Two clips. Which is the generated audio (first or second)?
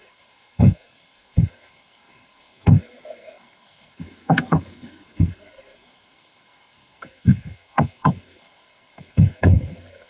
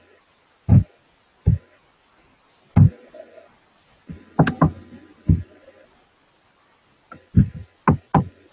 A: first